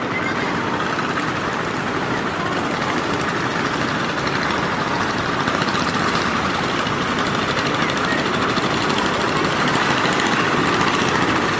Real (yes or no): yes